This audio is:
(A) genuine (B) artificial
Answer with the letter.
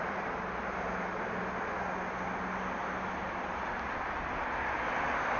A